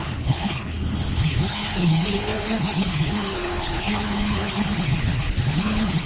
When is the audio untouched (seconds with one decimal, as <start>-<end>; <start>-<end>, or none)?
none